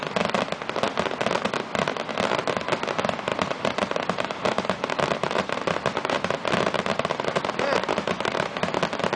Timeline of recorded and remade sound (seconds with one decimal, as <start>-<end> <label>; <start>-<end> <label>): 0.0-3.3 recorded; 3.3-8.5 remade; 8.5-9.2 recorded